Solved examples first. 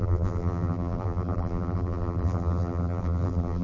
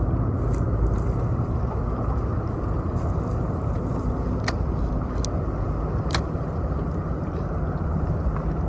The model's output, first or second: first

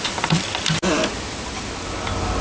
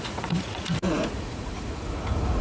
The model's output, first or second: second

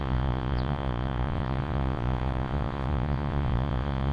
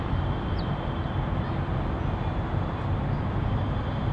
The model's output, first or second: first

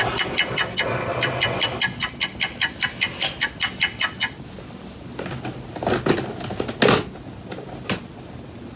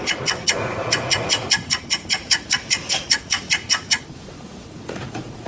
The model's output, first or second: second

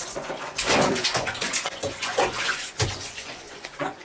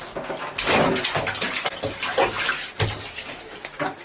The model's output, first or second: first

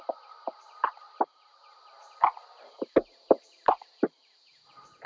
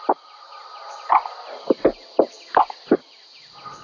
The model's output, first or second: first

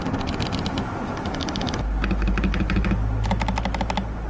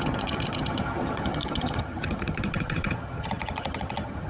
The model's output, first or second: second